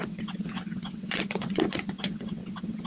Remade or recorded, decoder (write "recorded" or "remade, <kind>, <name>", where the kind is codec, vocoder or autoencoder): remade, vocoder, WaveNeXt